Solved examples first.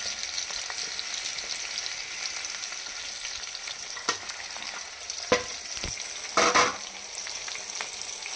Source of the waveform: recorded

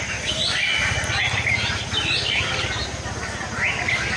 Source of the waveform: recorded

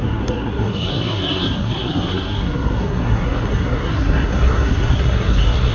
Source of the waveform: remade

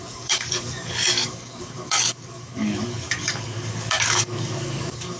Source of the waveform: remade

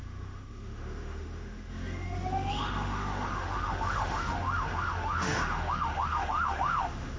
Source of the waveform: remade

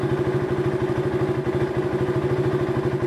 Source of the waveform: recorded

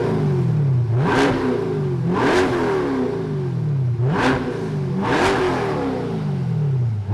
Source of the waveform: recorded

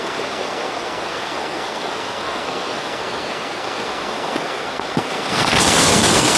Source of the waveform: remade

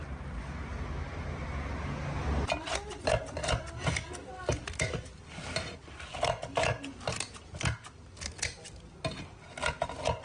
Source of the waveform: recorded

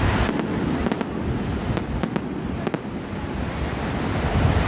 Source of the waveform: recorded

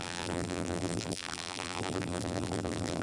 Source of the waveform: remade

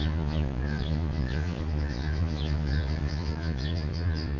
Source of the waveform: remade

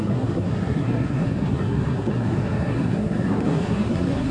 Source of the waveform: remade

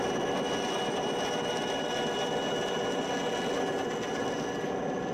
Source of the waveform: recorded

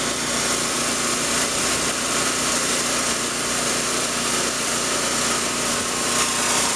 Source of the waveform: remade